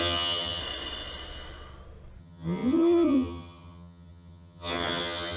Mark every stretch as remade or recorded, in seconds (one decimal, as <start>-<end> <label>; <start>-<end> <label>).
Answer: 0.0-0.6 remade; 0.6-2.2 recorded; 2.2-5.4 remade